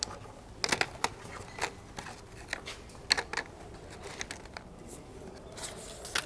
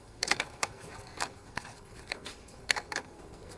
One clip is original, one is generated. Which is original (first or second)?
first